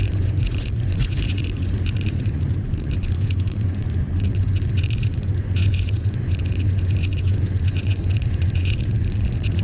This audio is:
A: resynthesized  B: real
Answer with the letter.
A